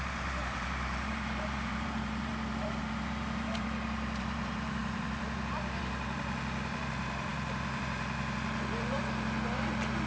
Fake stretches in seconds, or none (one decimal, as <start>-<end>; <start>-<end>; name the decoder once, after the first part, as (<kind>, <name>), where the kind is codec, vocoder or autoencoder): 0.0-2.3 (vocoder, BigVGAN v2); 2.8-10.1